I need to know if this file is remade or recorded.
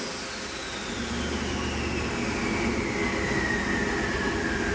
recorded